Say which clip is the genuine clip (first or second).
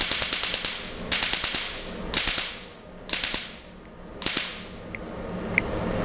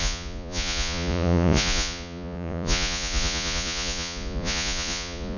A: first